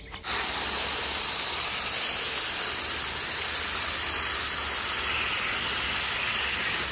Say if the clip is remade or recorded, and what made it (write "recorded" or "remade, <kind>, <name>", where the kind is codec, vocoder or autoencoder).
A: recorded